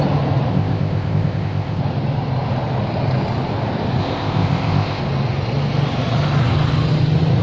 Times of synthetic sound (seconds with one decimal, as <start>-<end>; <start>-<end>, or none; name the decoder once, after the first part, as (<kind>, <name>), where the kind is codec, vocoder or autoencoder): 0.5-1.8 (codec, ZipCodec); 4.0-5.0